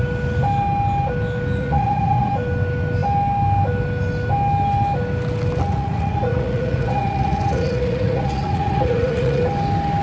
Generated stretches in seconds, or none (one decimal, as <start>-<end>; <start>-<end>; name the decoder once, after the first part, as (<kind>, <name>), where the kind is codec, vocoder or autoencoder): 1.6-2.3 (vocoder, Vocos); 5.7-9.4